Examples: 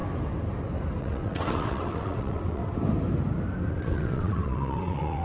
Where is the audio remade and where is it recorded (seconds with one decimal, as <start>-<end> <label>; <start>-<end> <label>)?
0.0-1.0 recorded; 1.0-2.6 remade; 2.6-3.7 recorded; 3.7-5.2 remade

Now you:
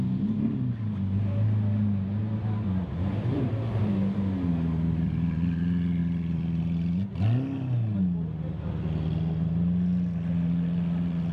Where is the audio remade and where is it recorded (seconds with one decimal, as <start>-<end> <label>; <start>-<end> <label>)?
0.0-2.2 recorded; 2.2-3.8 remade; 3.8-6.0 recorded; 6.0-6.6 remade; 6.6-11.3 recorded

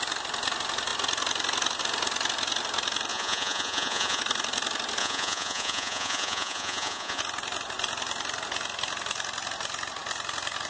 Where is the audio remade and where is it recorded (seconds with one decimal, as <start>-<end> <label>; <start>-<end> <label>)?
0.0-3.1 recorded; 3.1-4.2 remade; 4.2-5.0 recorded; 5.0-7.2 remade; 7.2-10.7 recorded

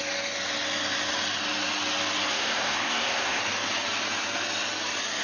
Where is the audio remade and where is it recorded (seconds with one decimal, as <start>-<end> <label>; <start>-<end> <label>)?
0.0-2.3 recorded; 2.3-3.4 remade; 3.4-5.2 recorded

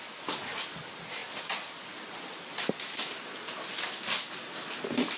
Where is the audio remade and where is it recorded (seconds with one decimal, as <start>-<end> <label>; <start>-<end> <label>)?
0.0-5.2 recorded

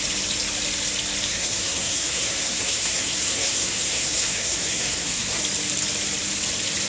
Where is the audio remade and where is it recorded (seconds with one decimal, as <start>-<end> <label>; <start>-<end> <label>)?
0.0-1.3 recorded; 1.3-5.4 remade; 5.4-6.9 recorded